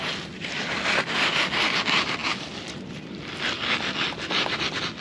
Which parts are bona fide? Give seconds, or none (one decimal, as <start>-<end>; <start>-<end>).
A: 0.0-5.0